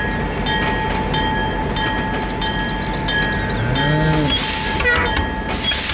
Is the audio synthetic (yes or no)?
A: no